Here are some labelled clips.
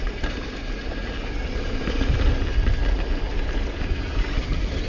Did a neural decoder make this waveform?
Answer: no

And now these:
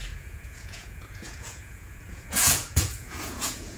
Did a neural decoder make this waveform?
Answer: yes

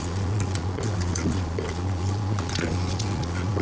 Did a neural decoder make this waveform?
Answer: yes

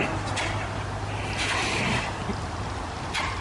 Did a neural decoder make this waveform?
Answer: no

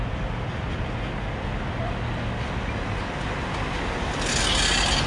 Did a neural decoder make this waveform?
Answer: no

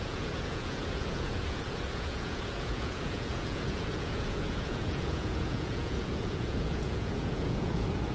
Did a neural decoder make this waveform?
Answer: yes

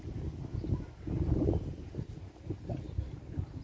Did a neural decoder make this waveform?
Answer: no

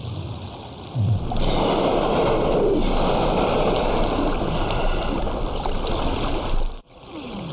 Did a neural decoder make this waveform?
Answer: no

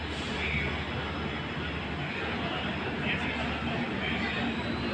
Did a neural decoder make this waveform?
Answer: no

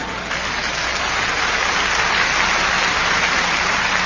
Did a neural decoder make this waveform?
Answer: no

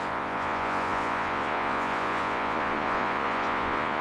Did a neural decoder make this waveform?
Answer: yes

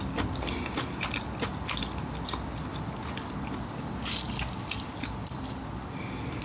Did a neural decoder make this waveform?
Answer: no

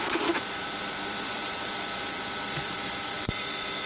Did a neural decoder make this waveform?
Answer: yes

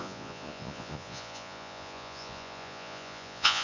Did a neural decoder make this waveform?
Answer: yes